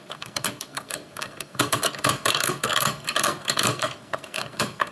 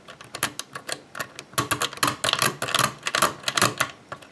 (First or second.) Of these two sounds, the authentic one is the second